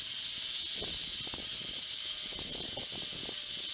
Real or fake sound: real